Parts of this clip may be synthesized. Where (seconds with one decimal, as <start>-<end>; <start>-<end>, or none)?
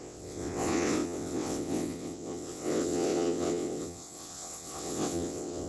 0.0-5.7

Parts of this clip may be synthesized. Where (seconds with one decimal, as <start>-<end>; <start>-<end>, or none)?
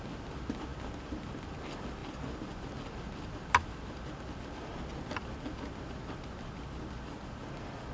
none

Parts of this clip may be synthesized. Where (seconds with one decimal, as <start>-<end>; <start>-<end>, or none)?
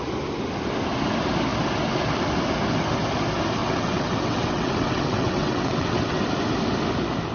3.6-6.2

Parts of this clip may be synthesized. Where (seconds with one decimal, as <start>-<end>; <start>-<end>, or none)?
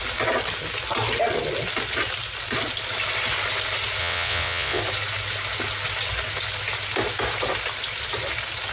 4.0-4.8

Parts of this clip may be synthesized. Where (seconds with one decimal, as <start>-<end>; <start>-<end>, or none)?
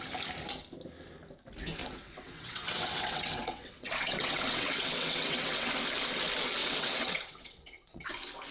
1.8-5.7; 6.6-8.1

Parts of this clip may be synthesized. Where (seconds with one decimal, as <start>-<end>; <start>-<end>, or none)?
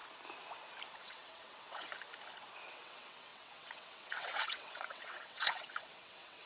0.9-1.9; 2.7-6.5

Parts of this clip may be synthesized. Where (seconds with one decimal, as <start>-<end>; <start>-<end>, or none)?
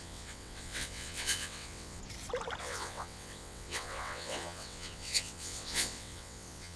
0.0-2.0; 2.6-6.8